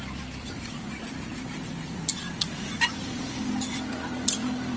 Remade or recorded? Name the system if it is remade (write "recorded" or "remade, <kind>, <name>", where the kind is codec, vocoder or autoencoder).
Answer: recorded